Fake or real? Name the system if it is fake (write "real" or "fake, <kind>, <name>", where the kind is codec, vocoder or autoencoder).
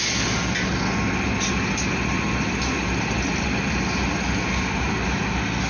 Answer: real